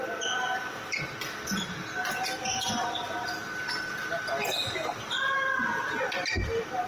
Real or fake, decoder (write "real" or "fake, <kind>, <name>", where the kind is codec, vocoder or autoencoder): real